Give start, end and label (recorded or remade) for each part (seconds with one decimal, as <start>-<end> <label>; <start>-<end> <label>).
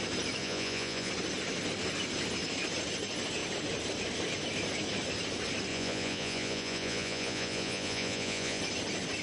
0.0-0.4 recorded; 0.4-1.1 remade; 1.1-5.7 recorded; 5.7-8.6 remade; 8.6-9.2 recorded